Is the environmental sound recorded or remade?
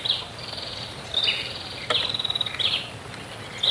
recorded